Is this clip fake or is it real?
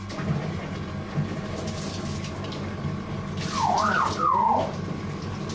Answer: real